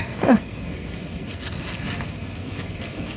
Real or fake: fake